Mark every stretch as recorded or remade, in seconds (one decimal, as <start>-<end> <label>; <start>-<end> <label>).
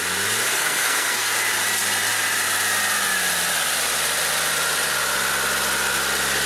0.0-0.5 recorded; 0.5-1.3 remade; 1.3-6.5 recorded